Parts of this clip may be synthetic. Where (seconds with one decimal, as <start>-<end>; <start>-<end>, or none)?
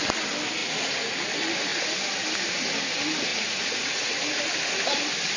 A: 0.6-1.2; 3.3-4.5